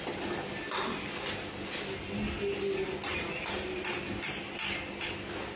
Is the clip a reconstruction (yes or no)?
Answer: no